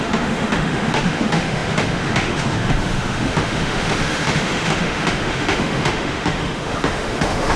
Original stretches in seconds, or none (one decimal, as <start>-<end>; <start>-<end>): none